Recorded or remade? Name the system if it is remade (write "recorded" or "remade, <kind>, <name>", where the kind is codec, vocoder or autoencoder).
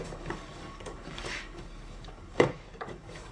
remade, codec, DAC